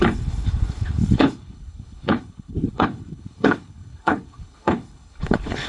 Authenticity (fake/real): fake